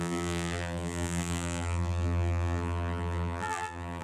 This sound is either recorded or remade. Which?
remade